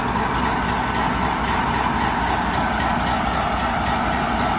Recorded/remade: recorded